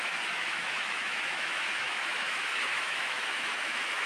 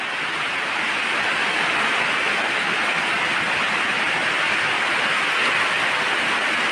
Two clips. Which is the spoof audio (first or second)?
first